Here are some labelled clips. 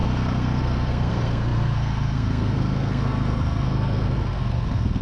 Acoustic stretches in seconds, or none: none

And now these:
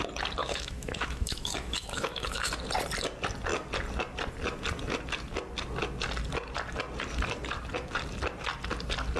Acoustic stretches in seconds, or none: 0.0-0.4; 2.5-9.2

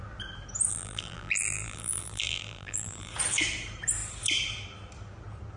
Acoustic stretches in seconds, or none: 0.0-0.7; 3.1-5.6

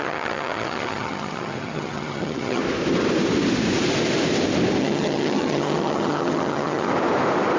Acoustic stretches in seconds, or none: 2.6-4.8; 6.9-7.6

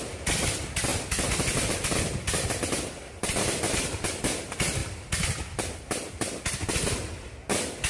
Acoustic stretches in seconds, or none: 0.0-7.9